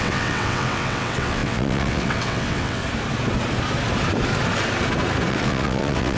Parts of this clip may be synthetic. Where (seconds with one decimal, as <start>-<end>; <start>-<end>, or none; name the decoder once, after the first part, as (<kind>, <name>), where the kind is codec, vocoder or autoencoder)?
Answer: 0.0-2.8 (vocoder, WaveNeXt); 5.3-6.2